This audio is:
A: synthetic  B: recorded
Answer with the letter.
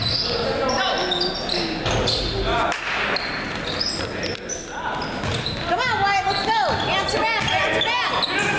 B